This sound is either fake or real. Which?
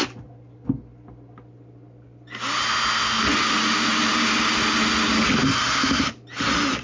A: real